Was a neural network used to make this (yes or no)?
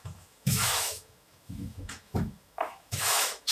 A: yes